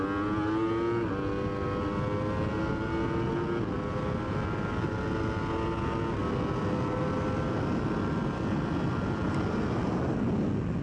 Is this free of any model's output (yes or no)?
yes